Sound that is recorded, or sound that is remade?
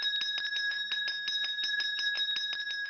recorded